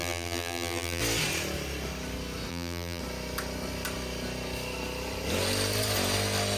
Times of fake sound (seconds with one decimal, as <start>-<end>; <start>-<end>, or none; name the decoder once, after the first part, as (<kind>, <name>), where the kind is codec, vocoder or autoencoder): 0.0-1.0 (vocoder, BigVGAN v2); 2.5-3.0

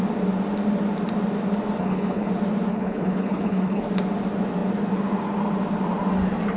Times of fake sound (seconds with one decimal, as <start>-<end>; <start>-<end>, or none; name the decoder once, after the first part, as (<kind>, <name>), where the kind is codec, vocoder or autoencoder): 1.8-2.3 (codec, HILCodec); 2.7-3.8

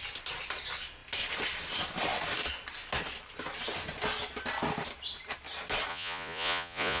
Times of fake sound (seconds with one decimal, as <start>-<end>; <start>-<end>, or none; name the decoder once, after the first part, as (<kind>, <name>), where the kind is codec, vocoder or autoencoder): 5.9-7.0 (vocoder, Vocos)